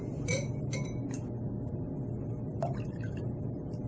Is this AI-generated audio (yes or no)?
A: yes